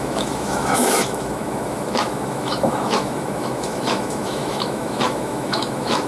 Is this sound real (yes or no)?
no